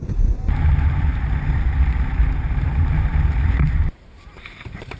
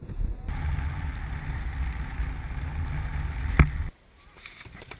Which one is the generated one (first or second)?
first